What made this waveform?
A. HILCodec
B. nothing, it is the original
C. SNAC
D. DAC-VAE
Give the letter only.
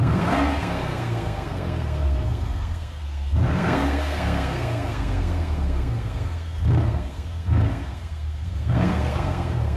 C